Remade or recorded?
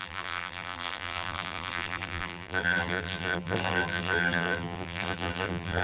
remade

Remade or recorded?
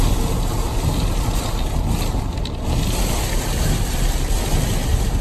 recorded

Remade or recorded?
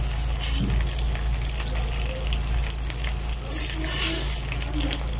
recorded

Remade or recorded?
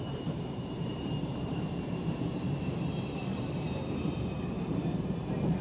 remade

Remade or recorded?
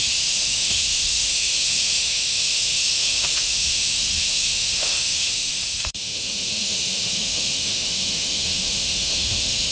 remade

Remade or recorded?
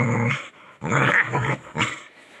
remade